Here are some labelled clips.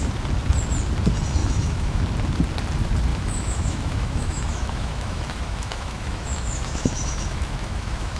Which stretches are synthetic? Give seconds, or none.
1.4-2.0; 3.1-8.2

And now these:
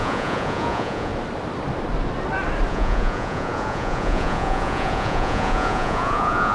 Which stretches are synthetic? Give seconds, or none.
0.0-1.1; 2.7-6.5

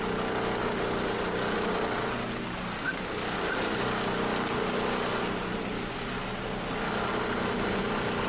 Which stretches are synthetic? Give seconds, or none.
none

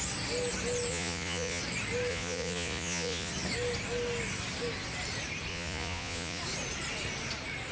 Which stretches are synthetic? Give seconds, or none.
0.9-1.6; 2.1-3.3; 5.5-6.4

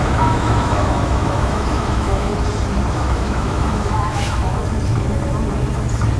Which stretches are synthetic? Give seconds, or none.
0.0-2.3; 2.9-4.6

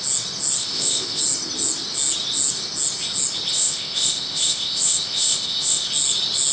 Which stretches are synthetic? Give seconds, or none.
0.6-1.2; 3.5-5.9

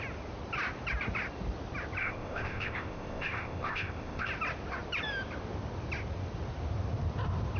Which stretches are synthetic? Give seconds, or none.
2.0-4.3